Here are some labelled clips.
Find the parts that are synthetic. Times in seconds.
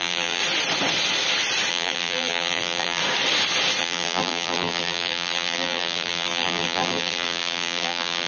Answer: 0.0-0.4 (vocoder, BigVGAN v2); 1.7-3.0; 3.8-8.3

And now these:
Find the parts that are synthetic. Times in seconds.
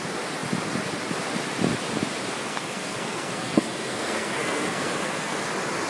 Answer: 2.4-5.5 (codec, SNAC)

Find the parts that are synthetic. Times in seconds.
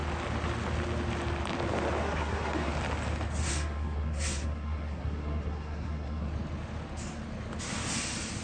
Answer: 2.0-2.7 (codec, SNAC); 3.4-6.3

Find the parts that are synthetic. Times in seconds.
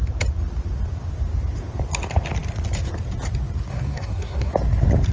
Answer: 3.7-4.5 (codec, SNAC)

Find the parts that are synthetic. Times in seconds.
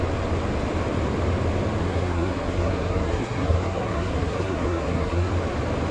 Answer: 1.8-5.3 (codec, SNAC)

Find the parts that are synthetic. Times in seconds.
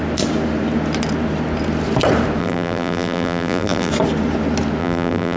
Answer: 2.4-3.9 (vocoder, BigVGAN v2); 4.8-5.4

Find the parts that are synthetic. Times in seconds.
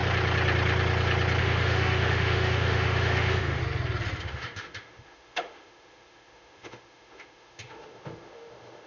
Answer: 1.4-3.6 (autoencoder, DAC-VAE); 4.2-8.9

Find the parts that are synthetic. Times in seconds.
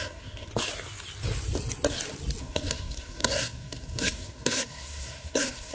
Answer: 0.0-0.5 (codec, SNAC); 2.4-5.7